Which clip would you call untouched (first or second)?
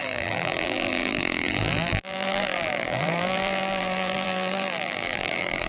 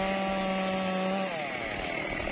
second